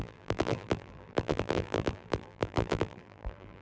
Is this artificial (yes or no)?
yes